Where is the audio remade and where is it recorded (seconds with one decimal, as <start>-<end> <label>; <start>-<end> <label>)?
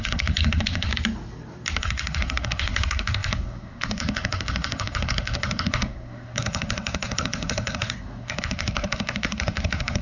0.0-0.9 remade; 0.9-1.8 recorded; 1.8-10.0 remade